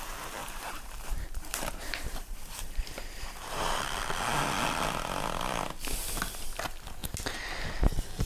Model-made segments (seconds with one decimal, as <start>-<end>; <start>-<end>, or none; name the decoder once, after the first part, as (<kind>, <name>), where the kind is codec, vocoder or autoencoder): 0.4-3.8 (vocoder, BigVGAN v2)